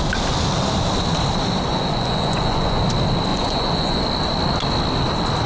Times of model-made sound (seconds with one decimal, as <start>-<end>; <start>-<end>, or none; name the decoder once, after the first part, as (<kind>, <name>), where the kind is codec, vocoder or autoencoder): 1.7-2.8 (vocoder, Vocos); 3.3-4.0